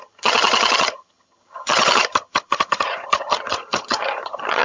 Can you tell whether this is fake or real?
fake